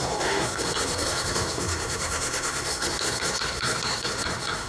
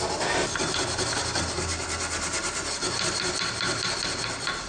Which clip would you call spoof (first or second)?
first